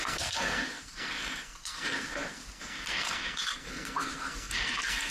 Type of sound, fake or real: fake